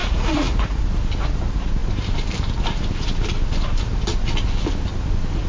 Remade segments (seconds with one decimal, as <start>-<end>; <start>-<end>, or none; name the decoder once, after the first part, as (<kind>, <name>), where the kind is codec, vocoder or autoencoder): 0.0-0.8 (vocoder, Vocos)